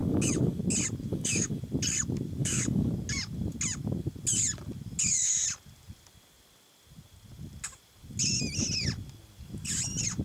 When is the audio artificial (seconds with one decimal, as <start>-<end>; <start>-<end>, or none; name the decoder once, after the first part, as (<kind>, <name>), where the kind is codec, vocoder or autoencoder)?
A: 0.0-0.6 (codec, DAC); 1.1-1.6; 2.4-2.9